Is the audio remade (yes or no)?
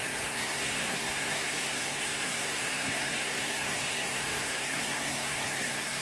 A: yes